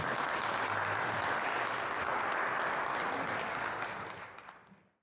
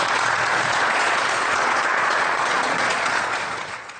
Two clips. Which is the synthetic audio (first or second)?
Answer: second